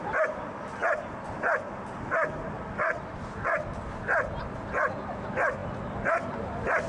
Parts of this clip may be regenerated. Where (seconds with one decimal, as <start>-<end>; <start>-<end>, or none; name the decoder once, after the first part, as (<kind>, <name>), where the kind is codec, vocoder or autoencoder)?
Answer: none